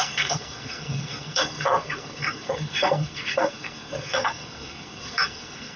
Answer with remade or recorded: remade